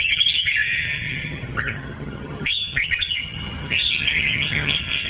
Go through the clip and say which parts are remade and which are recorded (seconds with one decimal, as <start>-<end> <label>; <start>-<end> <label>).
0.0-5.1 remade